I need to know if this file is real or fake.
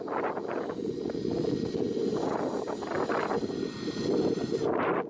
real